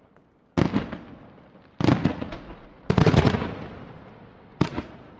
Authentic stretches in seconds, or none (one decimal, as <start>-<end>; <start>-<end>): 0.0-2.0; 3.7-4.5

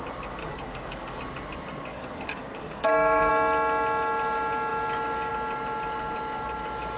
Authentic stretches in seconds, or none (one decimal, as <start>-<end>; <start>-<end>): 0.0-0.4; 1.2-1.9; 3.3-7.0

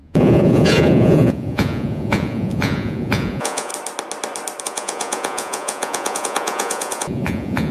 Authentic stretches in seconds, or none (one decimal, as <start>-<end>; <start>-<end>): 3.7-4.6

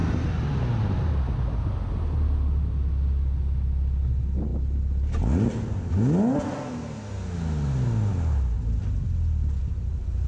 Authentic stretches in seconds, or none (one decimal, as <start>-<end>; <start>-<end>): 0.0-10.3